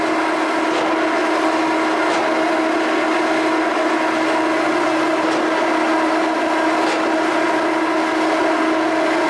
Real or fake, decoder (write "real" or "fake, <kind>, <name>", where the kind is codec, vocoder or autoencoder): real